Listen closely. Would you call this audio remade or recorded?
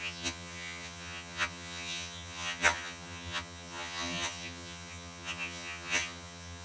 remade